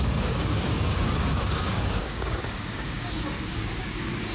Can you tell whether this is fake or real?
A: fake